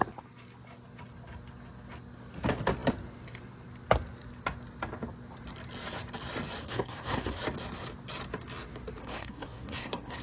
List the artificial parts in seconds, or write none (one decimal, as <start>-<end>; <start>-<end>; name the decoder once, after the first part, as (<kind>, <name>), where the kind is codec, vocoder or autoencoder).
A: 6.6-7.4 (codec, SNAC); 9.0-10.2